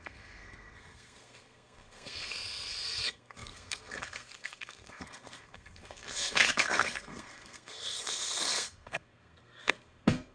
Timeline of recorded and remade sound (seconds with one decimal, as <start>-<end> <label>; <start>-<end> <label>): 0.0-10.3 remade